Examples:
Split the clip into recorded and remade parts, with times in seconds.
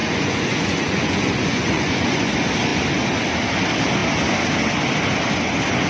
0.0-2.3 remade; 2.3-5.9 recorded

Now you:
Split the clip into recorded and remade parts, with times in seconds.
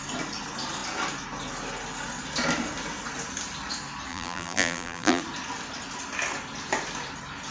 0.0-4.1 recorded; 4.1-5.2 remade; 5.2-7.5 recorded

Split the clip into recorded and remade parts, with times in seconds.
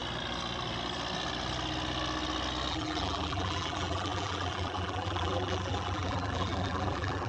0.0-2.7 recorded; 2.7-7.3 remade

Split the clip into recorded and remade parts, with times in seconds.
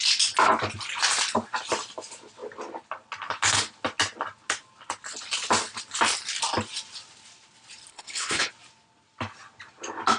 0.0-7.9 recorded; 7.9-8.5 remade; 8.5-10.2 recorded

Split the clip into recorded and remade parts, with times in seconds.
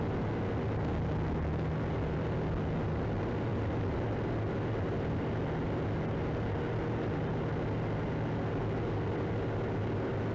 0.0-10.3 recorded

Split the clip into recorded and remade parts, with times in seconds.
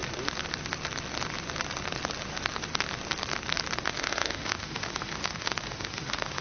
0.0-3.8 recorded; 3.8-6.4 remade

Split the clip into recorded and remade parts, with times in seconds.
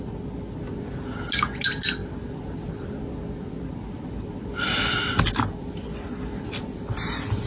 0.0-7.5 recorded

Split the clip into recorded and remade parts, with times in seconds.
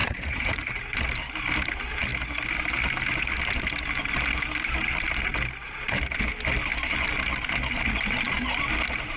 0.0-0.9 remade; 0.9-9.2 recorded